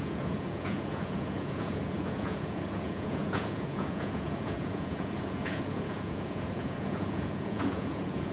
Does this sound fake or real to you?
fake